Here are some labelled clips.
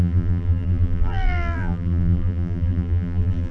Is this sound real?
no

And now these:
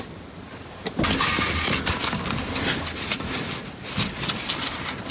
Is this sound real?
yes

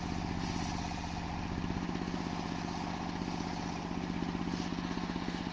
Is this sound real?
yes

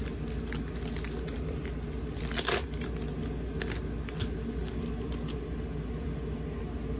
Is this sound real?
yes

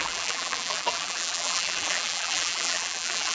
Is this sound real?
no